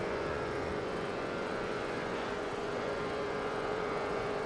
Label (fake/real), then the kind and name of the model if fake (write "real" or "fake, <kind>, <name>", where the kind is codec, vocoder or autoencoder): fake, vocoder, Vocos